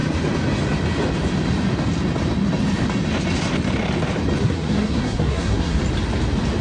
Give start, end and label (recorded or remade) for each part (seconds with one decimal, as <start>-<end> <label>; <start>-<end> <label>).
0.0-4.4 recorded; 4.4-5.8 remade; 5.8-6.6 recorded